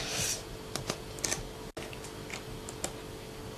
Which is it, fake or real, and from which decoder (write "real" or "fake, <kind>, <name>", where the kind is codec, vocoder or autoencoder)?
real